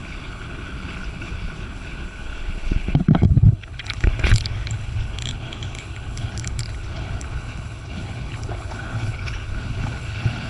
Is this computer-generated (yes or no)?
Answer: yes